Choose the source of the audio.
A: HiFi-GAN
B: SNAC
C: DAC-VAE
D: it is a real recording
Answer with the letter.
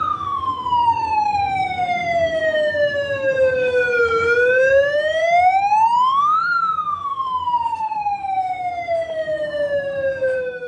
C